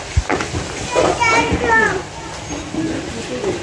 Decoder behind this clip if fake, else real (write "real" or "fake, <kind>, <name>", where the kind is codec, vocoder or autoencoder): real